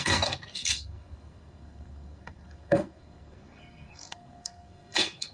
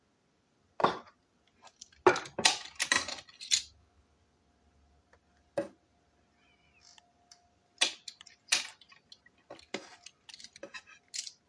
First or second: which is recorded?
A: second